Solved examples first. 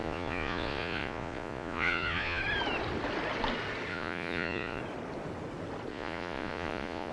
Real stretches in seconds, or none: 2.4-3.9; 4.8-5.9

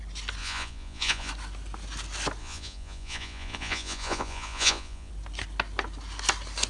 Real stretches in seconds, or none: 0.0-0.4; 1.3-2.4; 5.1-6.7

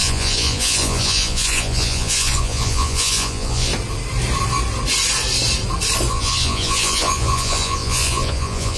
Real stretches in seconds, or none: 3.7-6.1

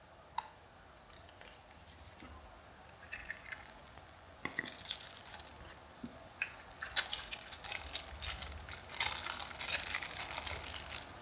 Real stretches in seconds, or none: 0.0-3.2; 5.4-6.1; 7.6-11.2

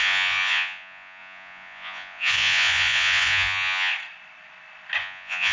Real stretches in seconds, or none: 3.9-5.0